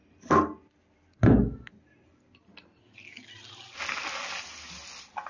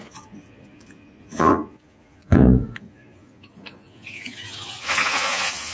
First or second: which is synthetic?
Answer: second